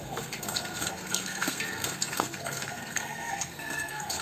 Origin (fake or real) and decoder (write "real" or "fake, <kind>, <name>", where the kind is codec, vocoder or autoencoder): fake, codec, SNAC